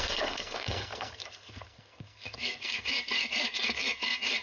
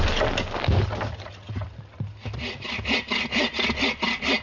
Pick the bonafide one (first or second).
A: second